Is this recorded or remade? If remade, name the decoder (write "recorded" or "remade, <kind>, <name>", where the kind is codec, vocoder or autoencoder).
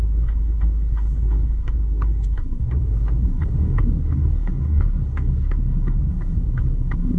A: remade, codec, SNAC